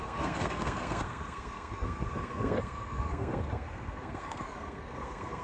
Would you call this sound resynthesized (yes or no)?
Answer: yes